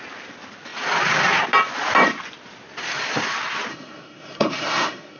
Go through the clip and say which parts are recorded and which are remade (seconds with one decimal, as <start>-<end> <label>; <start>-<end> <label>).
0.0-3.7 recorded; 3.7-5.2 remade